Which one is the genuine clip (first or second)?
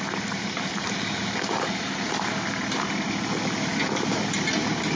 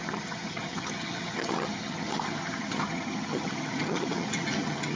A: first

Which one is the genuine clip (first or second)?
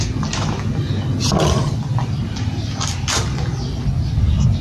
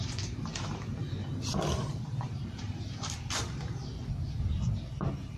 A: first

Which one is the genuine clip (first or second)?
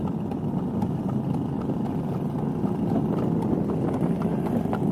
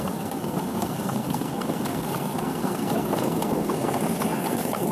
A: first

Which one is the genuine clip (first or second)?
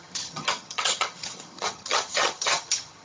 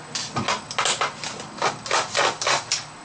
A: second